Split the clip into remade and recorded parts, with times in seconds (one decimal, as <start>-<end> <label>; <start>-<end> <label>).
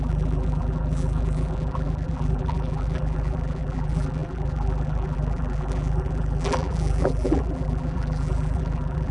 0.0-9.1 remade